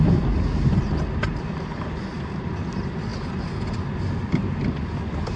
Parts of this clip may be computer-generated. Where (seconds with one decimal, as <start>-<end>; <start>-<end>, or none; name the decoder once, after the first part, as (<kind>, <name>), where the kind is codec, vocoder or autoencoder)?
none